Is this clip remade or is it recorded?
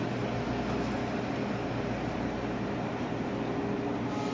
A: recorded